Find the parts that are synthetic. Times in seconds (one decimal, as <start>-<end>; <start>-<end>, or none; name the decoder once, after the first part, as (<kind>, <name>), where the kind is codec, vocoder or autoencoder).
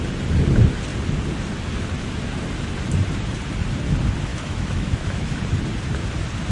4.3-5.4 (autoencoder, DAC-VAE)